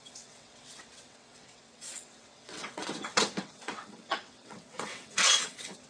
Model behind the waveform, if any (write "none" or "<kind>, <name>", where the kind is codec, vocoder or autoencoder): vocoder, WaveNeXt